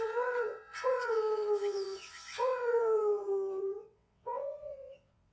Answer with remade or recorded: remade